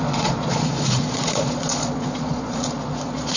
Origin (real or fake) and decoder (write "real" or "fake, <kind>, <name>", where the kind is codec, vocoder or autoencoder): fake, vocoder, Vocos